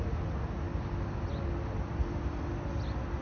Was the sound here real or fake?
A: real